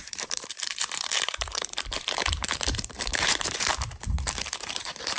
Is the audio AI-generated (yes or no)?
yes